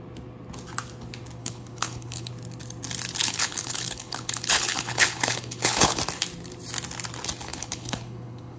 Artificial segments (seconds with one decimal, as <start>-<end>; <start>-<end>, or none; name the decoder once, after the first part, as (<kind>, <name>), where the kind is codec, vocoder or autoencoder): 1.4-2.3 (codec, HILCodec); 3.2-6.0; 7.5-8.6

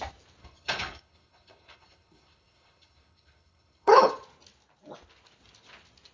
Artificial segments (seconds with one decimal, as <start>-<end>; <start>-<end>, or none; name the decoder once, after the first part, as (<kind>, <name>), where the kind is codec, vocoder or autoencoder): 0.4-4.1 (codec, HILCodec)

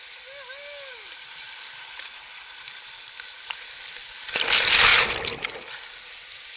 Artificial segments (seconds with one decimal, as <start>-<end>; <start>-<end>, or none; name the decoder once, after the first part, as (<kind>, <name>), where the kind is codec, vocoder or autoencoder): none